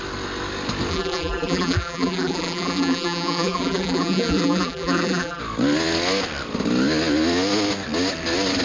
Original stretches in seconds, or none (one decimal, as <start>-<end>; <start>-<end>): 0.0-0.9; 5.4-8.6